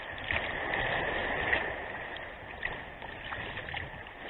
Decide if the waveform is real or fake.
fake